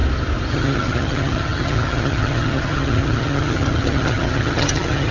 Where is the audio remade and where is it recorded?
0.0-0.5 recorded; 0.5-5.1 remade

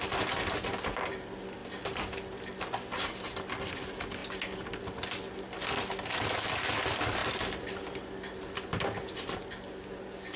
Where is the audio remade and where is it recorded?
0.0-10.4 recorded

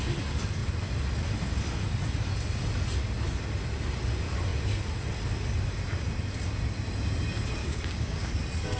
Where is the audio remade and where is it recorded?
0.0-7.6 recorded; 7.6-8.3 remade; 8.3-8.8 recorded

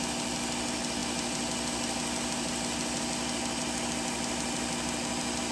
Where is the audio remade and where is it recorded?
0.0-5.5 recorded

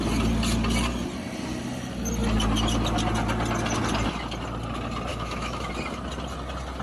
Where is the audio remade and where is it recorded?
0.0-5.1 recorded; 5.1-5.7 remade; 5.7-6.8 recorded

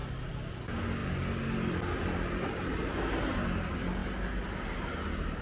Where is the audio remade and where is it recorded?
0.0-5.4 recorded

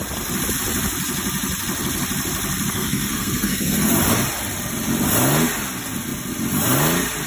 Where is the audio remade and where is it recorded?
0.0-2.7 recorded; 2.7-3.9 remade; 3.9-7.3 recorded